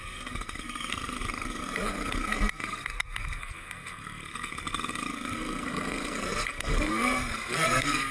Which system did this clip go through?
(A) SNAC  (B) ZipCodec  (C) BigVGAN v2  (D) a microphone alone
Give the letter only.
A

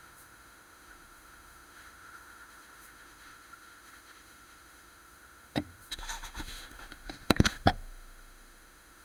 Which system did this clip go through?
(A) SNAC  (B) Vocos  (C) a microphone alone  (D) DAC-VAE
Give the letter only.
D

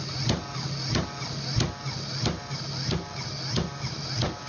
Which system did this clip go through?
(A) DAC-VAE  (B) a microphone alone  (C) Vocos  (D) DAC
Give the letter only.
B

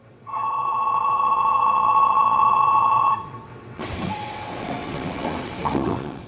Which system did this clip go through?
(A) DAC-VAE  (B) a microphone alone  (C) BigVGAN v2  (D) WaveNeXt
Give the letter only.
D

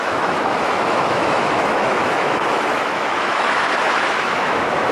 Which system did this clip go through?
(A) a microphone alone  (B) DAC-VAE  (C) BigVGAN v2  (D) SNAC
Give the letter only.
B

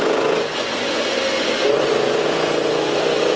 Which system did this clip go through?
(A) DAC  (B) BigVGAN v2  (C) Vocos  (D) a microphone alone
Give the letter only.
C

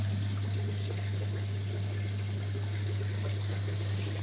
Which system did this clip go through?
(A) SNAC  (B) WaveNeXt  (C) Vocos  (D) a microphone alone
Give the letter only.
D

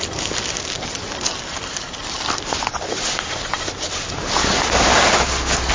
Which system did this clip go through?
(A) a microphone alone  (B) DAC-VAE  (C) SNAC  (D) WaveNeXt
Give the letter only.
A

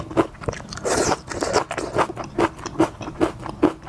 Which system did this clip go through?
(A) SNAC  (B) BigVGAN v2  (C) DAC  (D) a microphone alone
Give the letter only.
D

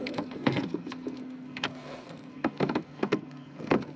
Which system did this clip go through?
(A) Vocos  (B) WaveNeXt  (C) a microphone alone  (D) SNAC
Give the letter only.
D